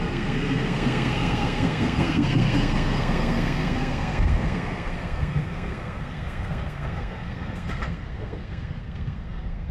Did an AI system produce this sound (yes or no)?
yes